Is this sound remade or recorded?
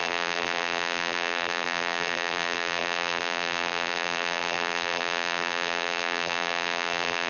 remade